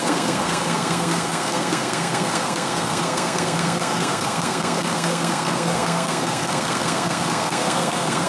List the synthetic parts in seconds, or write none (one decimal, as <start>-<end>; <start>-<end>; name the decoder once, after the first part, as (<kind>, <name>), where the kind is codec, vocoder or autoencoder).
0.0-8.3 (codec, SNAC)